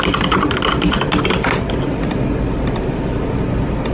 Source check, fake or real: real